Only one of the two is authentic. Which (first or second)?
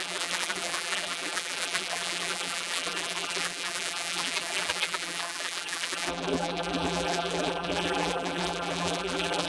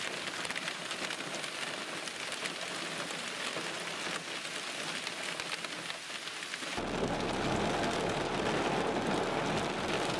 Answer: second